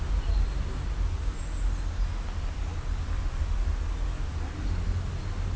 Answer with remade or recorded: recorded